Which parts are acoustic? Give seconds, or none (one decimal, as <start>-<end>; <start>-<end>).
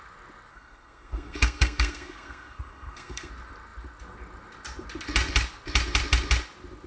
0.0-0.5; 3.3-6.9